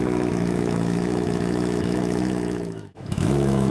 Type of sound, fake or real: fake